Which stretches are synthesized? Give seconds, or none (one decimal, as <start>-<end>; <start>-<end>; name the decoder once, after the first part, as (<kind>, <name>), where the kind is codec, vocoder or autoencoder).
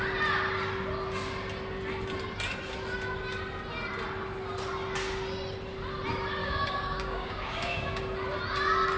6.4-8.0 (codec, DAC)